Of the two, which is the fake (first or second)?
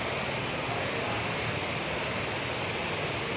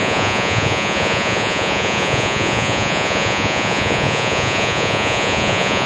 second